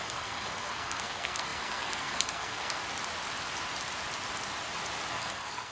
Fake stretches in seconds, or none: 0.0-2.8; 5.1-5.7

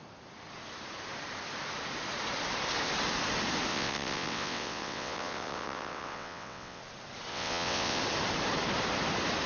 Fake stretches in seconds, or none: 3.7-6.8; 7.3-8.0